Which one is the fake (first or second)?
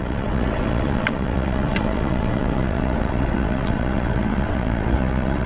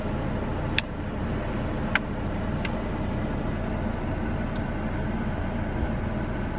first